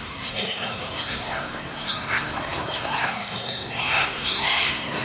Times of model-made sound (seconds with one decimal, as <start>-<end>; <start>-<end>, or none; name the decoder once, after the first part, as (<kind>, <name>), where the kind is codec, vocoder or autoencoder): 0.0-5.0 (codec, SNAC)